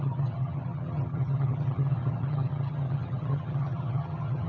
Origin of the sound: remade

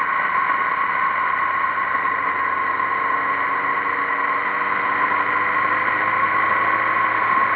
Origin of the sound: recorded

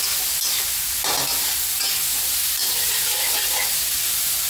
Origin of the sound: recorded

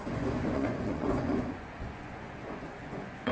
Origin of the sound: remade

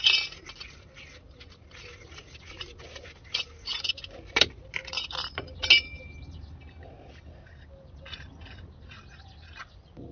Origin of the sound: recorded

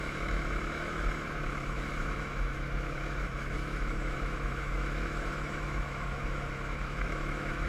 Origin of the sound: remade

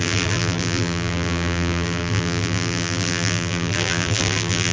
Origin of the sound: remade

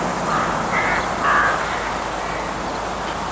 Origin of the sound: recorded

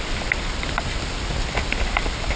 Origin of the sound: recorded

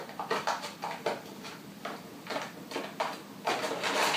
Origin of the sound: recorded